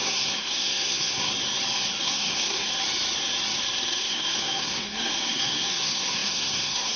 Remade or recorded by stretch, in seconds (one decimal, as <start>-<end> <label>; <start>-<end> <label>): 0.0-1.3 remade; 1.3-2.0 recorded; 2.0-2.7 remade; 2.7-4.0 recorded; 4.0-7.0 remade